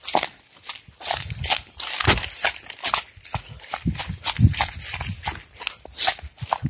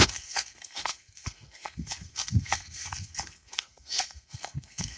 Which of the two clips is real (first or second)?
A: first